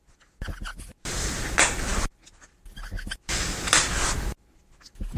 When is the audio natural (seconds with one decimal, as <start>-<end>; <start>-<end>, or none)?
0.0-5.2